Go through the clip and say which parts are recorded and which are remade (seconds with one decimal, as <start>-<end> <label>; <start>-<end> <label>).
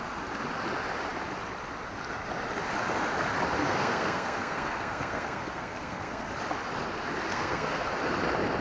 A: 0.0-3.6 recorded; 3.6-6.3 remade; 6.3-7.3 recorded; 7.3-7.9 remade; 7.9-8.6 recorded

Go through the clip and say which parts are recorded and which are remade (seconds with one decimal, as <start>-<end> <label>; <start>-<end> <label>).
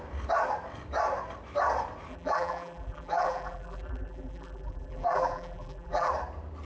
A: 0.0-2.1 recorded; 2.1-6.1 remade; 6.1-6.6 recorded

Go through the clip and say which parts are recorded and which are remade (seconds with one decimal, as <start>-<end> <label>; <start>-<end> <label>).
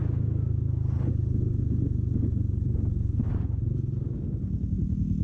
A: 0.0-5.2 recorded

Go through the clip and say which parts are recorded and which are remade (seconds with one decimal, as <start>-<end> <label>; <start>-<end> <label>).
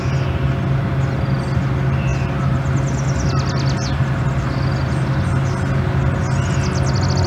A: 0.0-7.3 recorded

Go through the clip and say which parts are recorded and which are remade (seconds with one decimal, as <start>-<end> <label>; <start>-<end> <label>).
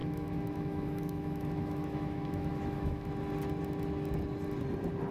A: 0.0-3.1 remade; 3.1-5.1 recorded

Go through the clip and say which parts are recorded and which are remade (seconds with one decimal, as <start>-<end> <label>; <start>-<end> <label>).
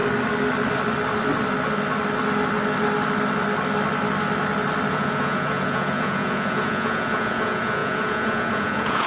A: 0.0-4.9 recorded; 4.9-9.1 remade